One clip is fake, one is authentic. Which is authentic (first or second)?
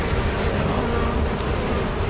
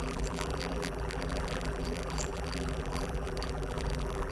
first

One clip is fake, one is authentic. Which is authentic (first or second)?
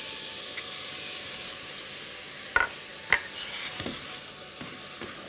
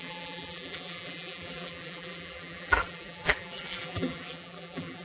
first